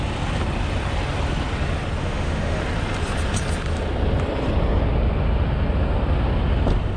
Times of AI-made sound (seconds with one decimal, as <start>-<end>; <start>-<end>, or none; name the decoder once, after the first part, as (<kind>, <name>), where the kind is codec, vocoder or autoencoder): 2.0-2.6 (autoencoder, DAC-VAE)